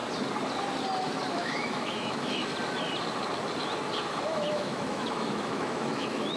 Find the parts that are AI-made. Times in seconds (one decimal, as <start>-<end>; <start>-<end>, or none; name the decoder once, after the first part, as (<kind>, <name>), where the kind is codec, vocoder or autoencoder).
1.3-2.5 (autoencoder, DAC-VAE); 4.0-6.4